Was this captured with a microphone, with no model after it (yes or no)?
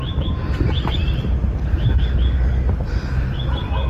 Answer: yes